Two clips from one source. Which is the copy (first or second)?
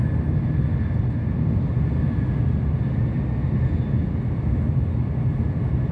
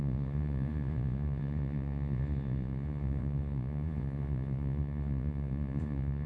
second